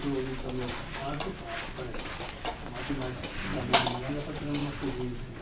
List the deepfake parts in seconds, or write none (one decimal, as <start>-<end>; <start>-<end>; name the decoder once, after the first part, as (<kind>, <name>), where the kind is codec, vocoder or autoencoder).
3.5-4.1 (vocoder, BigVGAN v2)